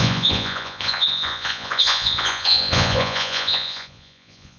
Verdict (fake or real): fake